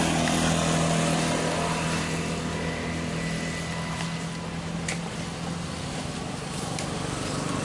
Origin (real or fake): real